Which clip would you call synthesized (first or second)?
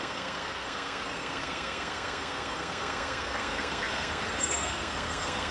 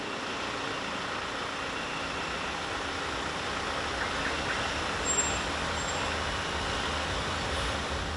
first